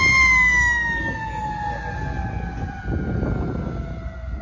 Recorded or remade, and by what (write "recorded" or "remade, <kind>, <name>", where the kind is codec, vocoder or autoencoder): recorded